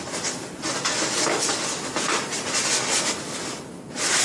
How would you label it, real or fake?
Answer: real